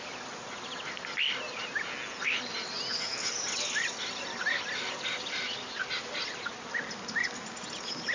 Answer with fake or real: real